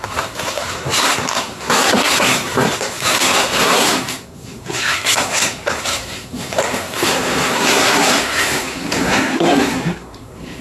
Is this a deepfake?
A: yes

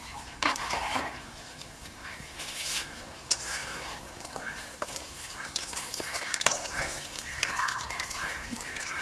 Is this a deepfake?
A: yes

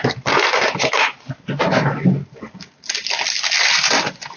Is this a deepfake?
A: no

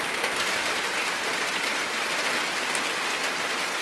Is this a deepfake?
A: no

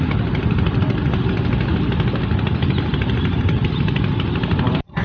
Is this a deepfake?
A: no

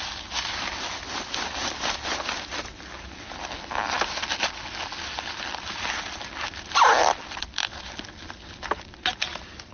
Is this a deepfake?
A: no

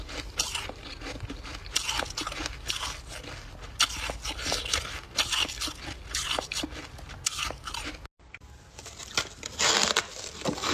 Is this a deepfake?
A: no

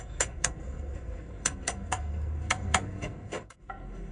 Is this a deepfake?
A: yes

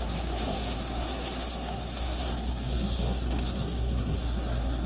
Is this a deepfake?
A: yes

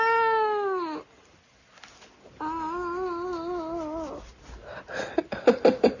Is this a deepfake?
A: no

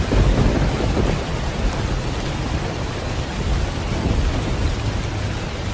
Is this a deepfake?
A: no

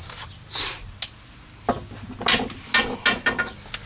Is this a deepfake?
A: no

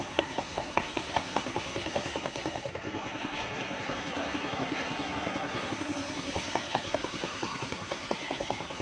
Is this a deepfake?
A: yes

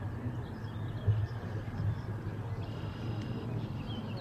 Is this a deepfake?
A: no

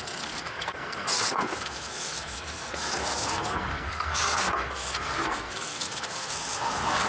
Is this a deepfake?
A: yes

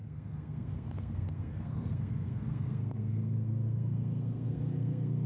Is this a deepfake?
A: yes